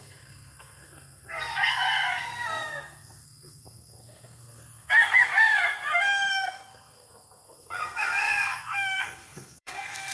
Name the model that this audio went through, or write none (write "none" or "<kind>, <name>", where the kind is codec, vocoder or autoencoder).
codec, SNAC